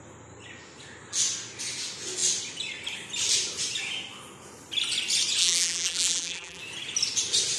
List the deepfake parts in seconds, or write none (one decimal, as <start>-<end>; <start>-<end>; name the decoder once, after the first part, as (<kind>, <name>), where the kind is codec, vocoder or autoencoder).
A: 5.4-6.6 (vocoder, BigVGAN v2)